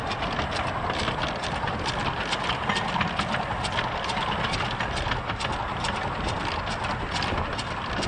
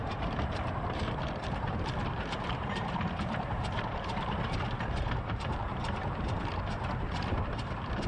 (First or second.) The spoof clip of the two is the second